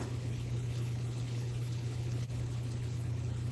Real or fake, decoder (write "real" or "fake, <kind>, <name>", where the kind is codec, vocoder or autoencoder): fake, codec, HILCodec